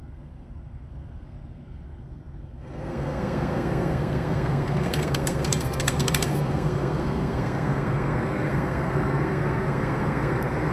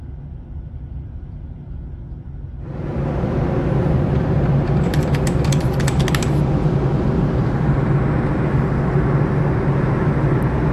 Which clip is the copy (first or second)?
first